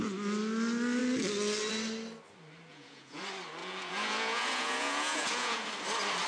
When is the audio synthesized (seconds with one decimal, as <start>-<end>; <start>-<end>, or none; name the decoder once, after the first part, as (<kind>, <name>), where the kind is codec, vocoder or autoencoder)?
2.7-3.2 (vocoder, Vocos); 3.6-5.7